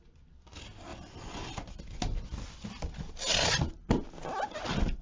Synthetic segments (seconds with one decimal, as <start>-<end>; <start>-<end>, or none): none